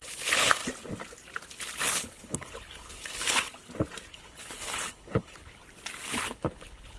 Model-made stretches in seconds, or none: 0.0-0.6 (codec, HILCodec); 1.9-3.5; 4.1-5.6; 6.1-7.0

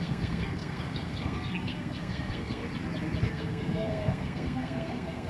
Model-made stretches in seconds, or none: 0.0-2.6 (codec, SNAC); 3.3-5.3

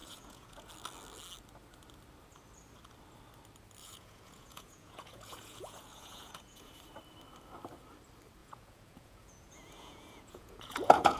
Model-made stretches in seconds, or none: 0.0-0.7 (vocoder, Vocos); 3.8-6.7; 8.4-11.2